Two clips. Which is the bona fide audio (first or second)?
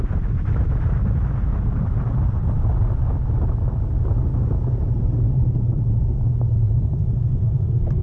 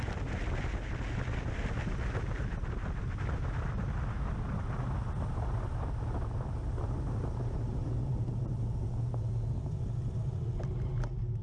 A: second